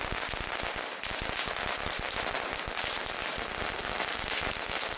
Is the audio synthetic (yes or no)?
no